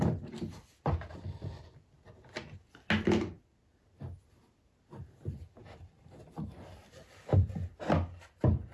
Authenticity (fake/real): real